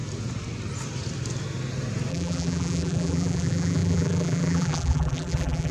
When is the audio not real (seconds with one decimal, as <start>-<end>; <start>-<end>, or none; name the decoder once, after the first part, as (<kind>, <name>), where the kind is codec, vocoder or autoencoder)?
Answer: 2.1-5.7 (vocoder, BigVGAN v2)